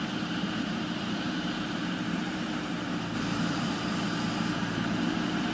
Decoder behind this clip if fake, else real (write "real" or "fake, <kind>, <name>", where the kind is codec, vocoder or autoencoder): fake, vocoder, BigVGAN v2